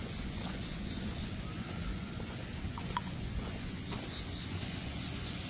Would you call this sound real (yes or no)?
no